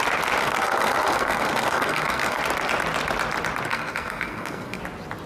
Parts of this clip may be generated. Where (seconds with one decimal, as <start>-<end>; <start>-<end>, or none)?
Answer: 0.4-2.4; 3.7-4.8